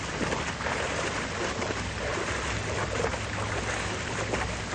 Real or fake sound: real